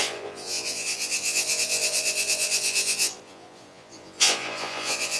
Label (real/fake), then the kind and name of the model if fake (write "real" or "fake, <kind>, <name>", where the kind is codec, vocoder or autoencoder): fake, vocoder, Vocos